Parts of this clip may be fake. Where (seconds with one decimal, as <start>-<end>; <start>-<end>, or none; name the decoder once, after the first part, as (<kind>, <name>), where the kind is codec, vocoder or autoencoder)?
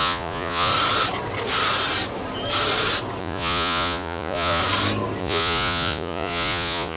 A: 0.0-0.7 (vocoder, Vocos); 3.2-4.6; 5.2-7.0